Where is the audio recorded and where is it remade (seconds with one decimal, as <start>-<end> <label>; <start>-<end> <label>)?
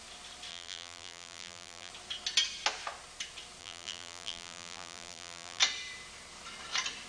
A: 0.0-0.5 recorded; 0.5-1.9 remade; 1.9-3.6 recorded; 3.6-5.6 remade; 5.6-7.1 recorded